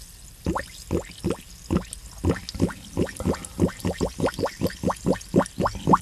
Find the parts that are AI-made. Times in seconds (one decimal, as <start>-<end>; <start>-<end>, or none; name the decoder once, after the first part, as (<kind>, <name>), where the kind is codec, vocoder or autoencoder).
none